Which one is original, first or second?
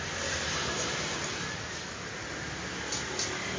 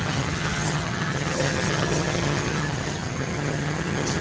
first